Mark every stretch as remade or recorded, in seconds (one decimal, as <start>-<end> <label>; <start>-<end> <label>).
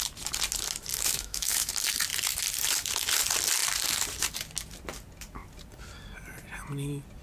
0.0-0.9 recorded; 0.9-1.7 remade; 1.7-7.2 recorded